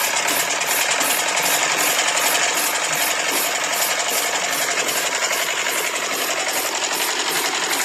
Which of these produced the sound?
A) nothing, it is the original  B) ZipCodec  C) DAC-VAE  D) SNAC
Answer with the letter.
A